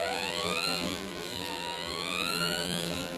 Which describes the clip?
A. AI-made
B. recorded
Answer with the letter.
A